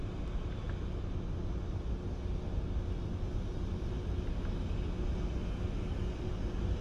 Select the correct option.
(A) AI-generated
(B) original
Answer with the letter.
B